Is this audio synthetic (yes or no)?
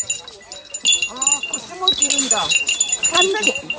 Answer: no